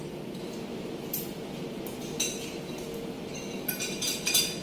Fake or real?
real